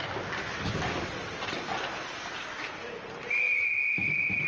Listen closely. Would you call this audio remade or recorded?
recorded